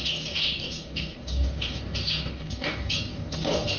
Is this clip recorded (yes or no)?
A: no